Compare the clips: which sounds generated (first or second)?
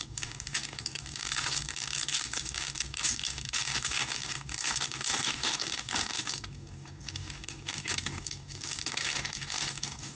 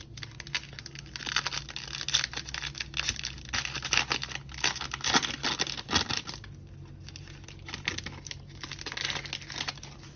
first